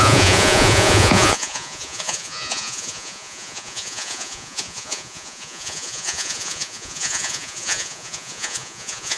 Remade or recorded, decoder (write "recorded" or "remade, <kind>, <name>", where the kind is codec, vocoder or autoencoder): remade, vocoder, Vocos